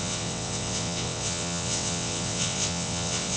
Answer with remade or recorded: remade